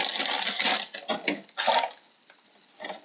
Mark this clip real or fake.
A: real